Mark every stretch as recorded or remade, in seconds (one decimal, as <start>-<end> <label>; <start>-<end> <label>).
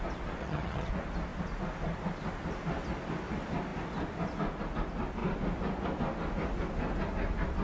0.0-0.4 recorded; 0.4-0.9 remade; 0.9-7.6 recorded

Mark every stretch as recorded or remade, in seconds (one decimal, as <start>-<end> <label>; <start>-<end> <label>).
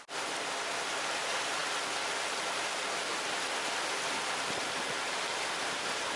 0.0-6.2 recorded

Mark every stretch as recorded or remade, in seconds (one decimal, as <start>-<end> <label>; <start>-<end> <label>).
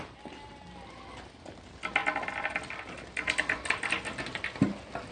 0.0-5.1 recorded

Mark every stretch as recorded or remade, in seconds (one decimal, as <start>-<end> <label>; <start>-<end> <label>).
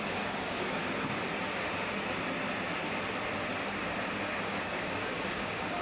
0.0-0.8 remade; 0.8-4.3 recorded; 4.3-5.8 remade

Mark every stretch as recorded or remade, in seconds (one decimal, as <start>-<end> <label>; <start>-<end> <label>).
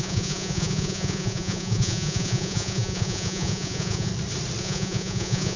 0.0-4.1 remade; 4.1-4.6 recorded; 4.6-5.6 remade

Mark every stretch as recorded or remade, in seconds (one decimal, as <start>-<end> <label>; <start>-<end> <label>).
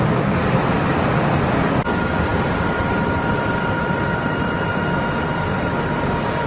0.0-6.5 recorded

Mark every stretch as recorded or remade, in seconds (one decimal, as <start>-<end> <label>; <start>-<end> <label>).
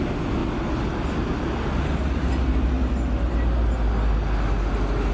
0.0-5.1 recorded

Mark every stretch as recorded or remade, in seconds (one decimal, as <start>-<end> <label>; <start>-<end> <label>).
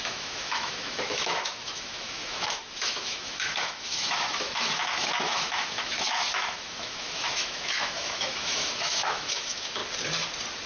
0.0-9.8 remade; 9.8-10.7 recorded